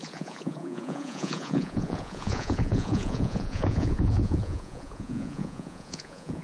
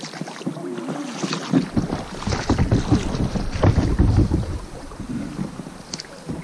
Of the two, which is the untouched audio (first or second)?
second